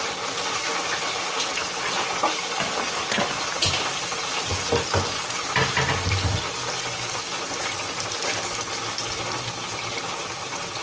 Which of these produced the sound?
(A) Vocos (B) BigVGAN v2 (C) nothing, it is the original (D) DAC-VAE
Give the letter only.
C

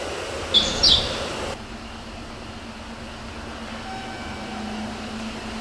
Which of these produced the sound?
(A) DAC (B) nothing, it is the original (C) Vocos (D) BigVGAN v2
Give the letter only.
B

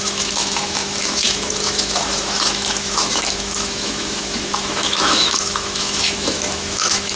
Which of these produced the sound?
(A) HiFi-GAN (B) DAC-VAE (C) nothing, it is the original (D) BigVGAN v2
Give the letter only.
B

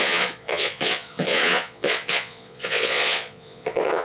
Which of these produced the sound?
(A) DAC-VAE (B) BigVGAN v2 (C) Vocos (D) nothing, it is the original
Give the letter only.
C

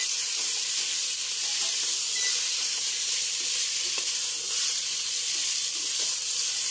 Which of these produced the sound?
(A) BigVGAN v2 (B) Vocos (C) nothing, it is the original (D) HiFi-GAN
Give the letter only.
C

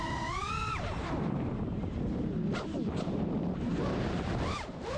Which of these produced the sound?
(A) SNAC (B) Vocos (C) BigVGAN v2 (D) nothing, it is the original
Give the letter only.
C